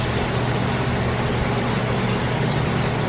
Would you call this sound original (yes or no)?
yes